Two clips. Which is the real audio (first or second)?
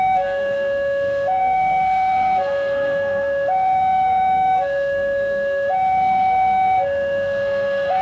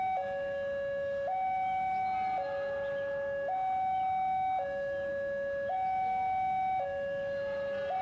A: second